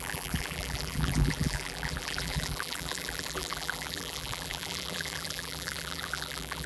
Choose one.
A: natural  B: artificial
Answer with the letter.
B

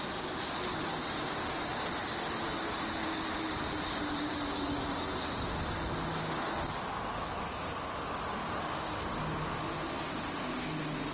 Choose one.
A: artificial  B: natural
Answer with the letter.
B